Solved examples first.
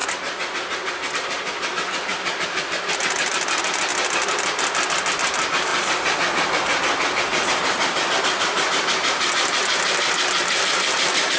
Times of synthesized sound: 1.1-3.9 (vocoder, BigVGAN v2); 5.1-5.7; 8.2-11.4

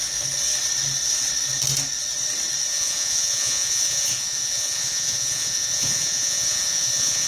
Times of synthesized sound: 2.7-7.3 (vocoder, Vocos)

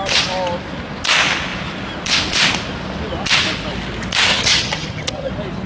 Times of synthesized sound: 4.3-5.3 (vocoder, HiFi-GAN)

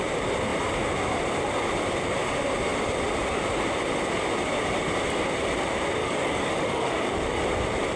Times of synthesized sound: 6.0-7.4 (codec, DAC)

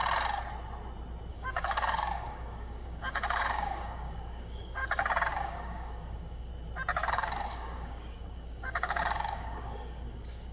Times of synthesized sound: 1.3-4.8 (codec, DAC); 5.3-6.5; 7.1-10.5

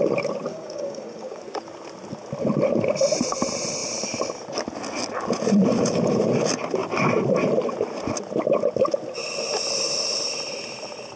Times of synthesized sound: 0.5-1.4 (codec, DAC)